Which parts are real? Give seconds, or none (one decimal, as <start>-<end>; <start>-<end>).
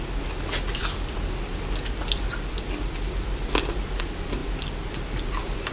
0.0-5.7